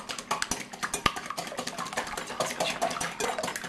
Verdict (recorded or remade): recorded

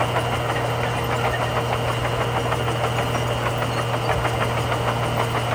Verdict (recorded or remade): recorded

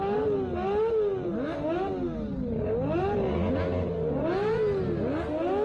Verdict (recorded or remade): recorded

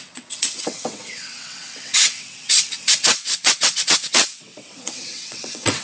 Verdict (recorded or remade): remade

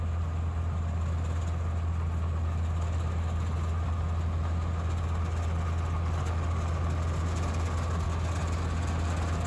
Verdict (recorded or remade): recorded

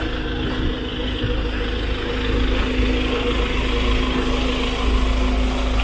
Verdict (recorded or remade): recorded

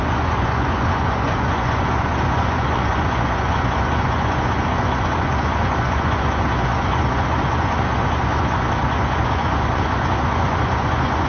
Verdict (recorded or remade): remade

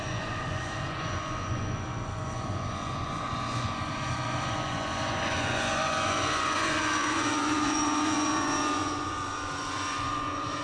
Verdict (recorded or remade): remade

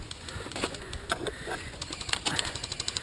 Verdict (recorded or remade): remade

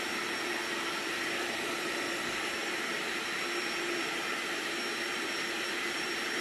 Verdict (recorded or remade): remade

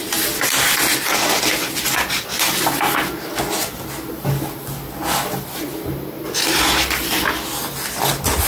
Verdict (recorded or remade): recorded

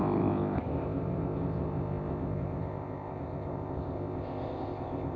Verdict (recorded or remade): remade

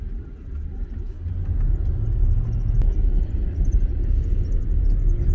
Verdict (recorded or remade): recorded